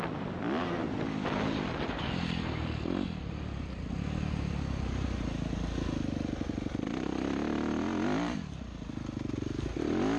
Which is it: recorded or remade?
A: recorded